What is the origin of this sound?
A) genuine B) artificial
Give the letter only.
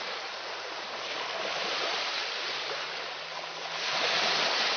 B